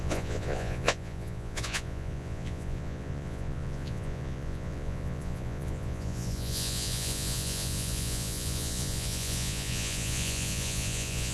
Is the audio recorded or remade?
remade